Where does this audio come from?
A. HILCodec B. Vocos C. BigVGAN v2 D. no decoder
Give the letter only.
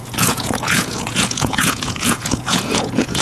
B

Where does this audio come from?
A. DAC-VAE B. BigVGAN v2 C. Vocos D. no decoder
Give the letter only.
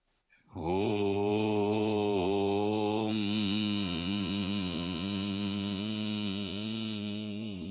C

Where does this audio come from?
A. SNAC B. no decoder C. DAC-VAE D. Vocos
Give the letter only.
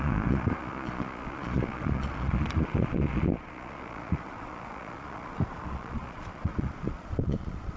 D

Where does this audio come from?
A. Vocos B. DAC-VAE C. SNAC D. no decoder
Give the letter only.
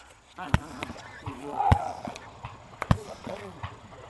A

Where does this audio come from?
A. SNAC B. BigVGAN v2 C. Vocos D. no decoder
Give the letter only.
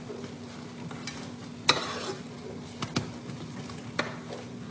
D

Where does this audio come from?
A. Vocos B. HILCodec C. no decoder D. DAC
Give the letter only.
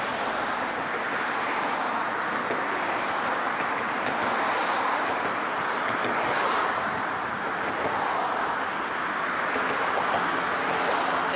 C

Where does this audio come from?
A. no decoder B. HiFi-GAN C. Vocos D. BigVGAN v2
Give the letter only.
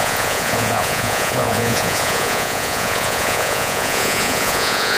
C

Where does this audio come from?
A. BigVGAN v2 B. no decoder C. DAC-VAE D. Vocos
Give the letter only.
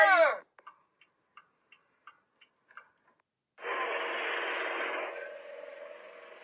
B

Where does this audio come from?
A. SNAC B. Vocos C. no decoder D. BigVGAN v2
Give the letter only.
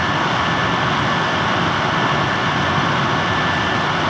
C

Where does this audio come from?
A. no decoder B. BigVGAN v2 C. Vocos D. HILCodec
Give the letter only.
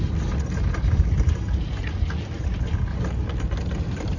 A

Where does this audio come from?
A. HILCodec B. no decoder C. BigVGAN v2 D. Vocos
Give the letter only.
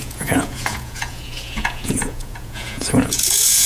D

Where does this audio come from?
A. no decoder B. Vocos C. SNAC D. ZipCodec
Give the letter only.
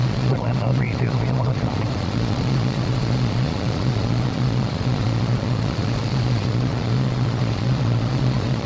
B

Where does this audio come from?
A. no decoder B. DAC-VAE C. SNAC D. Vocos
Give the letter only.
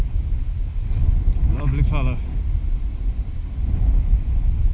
A